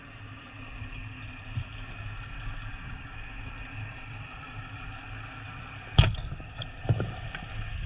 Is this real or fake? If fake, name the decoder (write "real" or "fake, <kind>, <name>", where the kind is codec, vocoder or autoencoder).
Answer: real